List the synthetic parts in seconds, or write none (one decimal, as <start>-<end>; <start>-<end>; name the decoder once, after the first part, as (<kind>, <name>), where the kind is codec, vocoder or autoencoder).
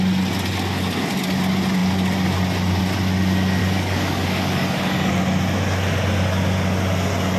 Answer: 3.6-5.1 (codec, DAC)